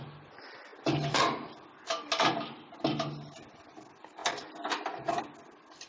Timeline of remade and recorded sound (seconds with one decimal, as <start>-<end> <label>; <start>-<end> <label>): 0.0-5.9 recorded